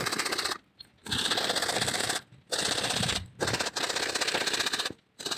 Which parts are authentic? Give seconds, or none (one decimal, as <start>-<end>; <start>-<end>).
0.0-2.0; 3.4-5.4